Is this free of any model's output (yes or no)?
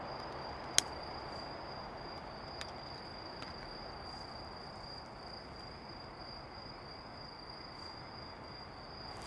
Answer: yes